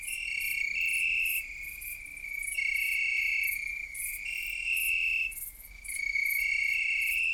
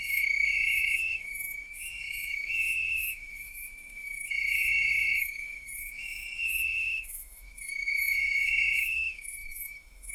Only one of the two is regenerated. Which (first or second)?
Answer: second